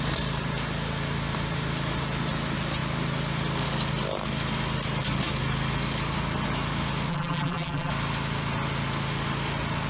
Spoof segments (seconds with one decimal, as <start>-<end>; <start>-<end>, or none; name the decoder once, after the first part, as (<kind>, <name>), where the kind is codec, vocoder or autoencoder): 7.1-7.9 (vocoder, BigVGAN v2)